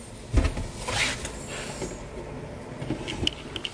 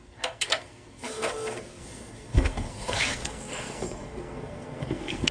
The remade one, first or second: second